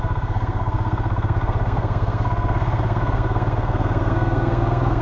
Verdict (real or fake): fake